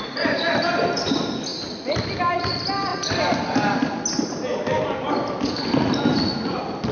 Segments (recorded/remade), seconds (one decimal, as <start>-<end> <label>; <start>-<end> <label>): 0.0-6.9 recorded